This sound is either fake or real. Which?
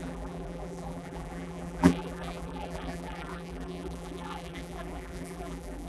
fake